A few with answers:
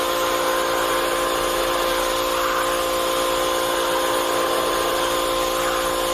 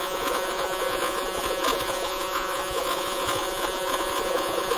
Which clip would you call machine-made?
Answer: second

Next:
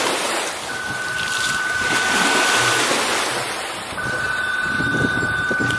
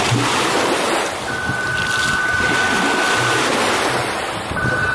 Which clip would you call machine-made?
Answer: first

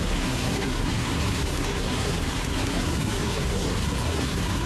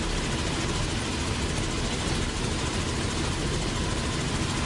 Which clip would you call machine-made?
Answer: first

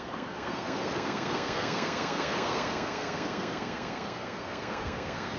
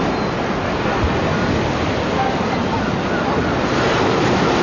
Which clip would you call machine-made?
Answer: first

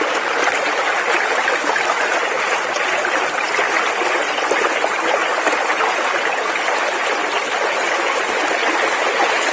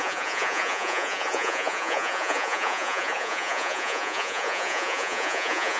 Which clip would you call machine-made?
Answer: second